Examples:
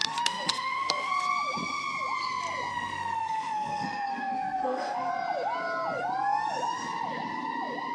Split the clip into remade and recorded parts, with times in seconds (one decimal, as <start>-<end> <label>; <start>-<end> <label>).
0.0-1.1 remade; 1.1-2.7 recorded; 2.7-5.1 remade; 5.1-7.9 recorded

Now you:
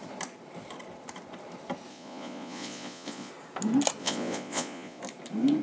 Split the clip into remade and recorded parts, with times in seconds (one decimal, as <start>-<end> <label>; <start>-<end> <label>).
0.0-1.9 recorded; 1.9-3.3 remade; 3.3-4.0 recorded; 4.0-5.0 remade; 5.0-5.6 recorded

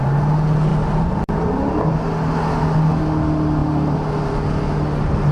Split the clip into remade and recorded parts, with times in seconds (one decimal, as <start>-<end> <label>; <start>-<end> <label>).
0.0-0.7 recorded; 0.7-1.9 remade; 1.9-5.3 recorded

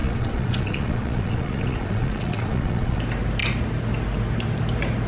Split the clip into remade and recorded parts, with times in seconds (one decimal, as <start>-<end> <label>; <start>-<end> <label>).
0.0-3.0 remade; 3.0-5.1 recorded

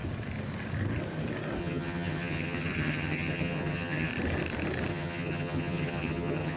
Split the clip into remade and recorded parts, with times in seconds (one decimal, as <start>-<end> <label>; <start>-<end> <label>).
0.0-1.6 recorded; 1.6-4.1 remade; 4.1-4.9 recorded; 4.9-6.6 remade

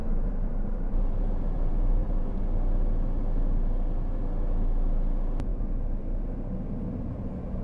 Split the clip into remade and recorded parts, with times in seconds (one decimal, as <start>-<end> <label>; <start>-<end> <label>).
0.0-2.4 remade; 2.4-7.6 recorded

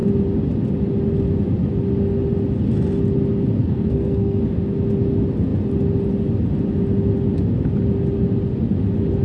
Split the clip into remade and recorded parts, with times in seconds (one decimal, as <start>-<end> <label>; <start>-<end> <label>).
0.0-3.6 recorded; 3.6-4.4 remade; 4.4-9.2 recorded